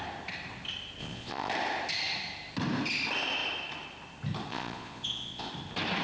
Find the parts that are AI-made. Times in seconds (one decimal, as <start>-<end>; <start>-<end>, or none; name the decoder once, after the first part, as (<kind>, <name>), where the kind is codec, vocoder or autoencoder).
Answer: 1.0-1.5 (vocoder, Vocos); 4.5-5.5